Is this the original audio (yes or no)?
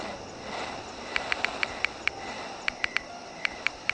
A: yes